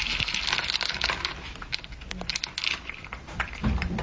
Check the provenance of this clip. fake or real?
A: real